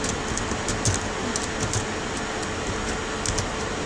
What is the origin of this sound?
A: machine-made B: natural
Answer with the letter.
B